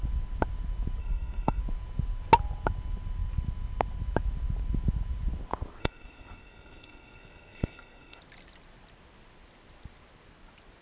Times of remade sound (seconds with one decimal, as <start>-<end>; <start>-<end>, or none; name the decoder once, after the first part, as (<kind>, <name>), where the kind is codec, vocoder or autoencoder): 1.0-1.6 (codec, SNAC); 5.8-8.2